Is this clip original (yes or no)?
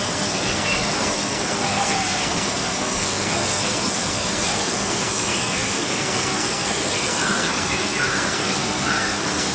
no